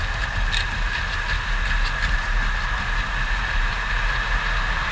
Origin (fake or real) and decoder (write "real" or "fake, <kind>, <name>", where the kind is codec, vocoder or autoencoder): real